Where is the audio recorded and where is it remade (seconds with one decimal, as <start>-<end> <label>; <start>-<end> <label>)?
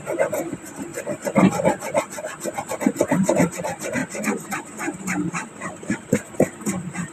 0.0-0.9 remade; 0.9-2.7 recorded; 2.7-7.1 remade